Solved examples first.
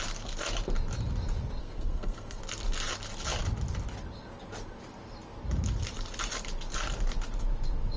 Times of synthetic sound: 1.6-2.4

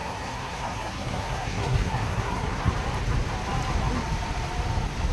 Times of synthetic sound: 0.0-2.7

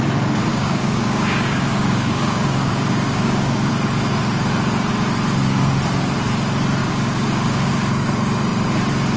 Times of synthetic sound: 0.5-3.7; 6.8-7.7

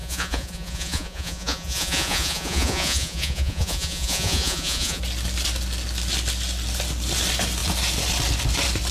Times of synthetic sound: 0.0-5.0

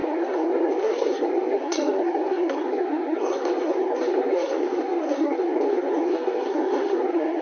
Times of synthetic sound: 0.0-7.4

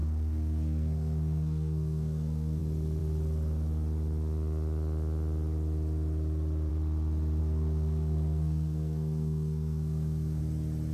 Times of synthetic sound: 0.0-2.6; 7.4-10.4

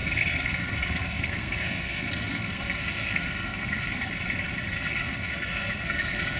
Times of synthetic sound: 0.0-4.0; 4.7-6.4

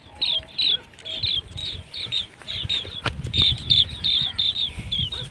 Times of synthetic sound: 1.6-4.8